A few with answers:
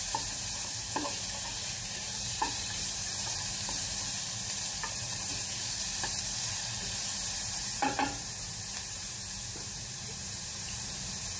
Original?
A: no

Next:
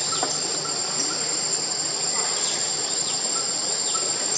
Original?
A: no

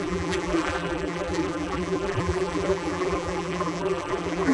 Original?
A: no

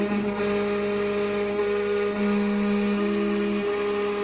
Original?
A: yes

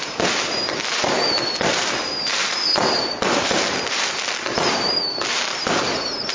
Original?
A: no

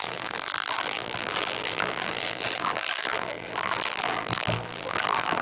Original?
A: no